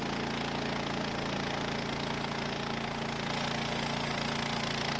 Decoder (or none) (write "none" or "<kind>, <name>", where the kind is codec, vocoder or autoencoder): none